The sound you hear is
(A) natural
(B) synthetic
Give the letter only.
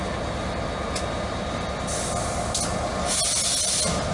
A